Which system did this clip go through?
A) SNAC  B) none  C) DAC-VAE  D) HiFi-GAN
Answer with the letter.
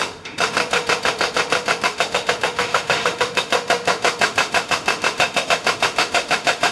C